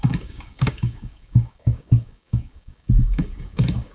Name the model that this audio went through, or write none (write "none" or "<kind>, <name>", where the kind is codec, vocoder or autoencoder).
codec, DAC